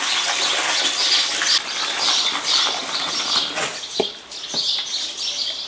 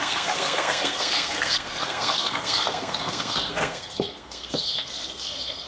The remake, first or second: second